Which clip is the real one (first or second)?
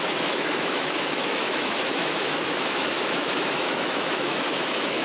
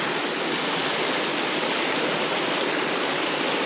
second